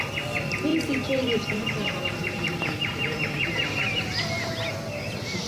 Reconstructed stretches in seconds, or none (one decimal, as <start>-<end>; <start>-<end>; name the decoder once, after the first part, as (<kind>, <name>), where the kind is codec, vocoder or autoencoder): 0.7-4.0 (vocoder, BigVGAN v2)